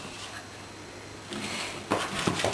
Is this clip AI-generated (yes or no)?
yes